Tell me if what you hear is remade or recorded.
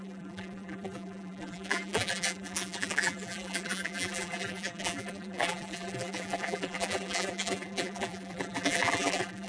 remade